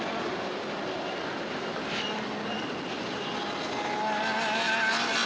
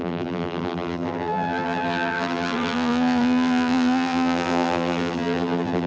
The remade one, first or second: second